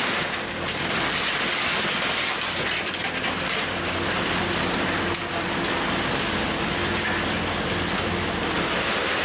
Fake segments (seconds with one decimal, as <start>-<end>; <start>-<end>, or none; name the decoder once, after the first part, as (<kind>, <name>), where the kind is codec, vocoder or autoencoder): none